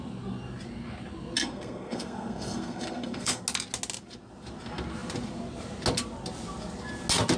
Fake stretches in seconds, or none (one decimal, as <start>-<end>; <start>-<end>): 1.4-3.4